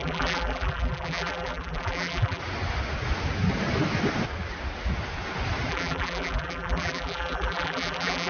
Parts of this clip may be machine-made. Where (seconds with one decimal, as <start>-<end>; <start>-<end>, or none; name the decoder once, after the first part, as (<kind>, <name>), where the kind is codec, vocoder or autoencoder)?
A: 0.0-2.4 (vocoder, BigVGAN v2); 5.7-8.3